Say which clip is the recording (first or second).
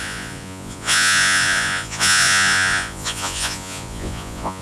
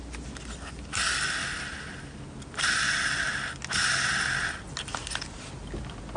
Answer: second